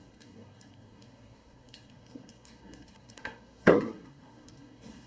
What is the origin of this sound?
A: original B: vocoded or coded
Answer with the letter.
B